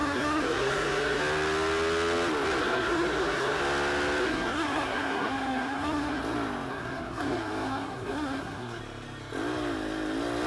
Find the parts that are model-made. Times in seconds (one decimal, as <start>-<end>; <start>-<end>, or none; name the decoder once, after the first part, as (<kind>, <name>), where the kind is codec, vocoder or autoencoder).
0.0-1.2 (codec, SNAC); 2.6-3.6; 4.2-6.2; 6.7-8.8